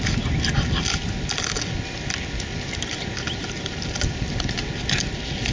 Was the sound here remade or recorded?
recorded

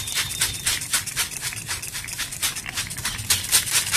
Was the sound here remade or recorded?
recorded